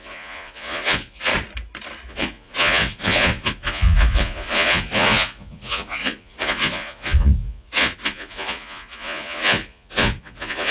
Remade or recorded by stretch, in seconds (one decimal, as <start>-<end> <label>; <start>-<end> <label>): 0.0-1.3 remade; 1.3-2.1 recorded; 2.1-10.7 remade